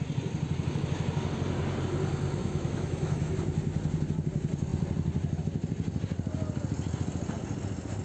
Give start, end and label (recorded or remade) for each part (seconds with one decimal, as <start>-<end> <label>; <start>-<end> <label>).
0.0-2.4 recorded; 2.4-3.3 remade; 3.3-8.0 recorded